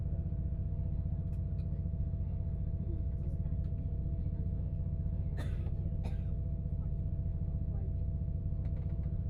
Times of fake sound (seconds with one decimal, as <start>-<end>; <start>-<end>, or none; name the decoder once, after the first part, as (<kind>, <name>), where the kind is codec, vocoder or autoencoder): 1.9-3.4 (autoencoder, DAC-VAE); 4.2-5.7; 7.3-8.4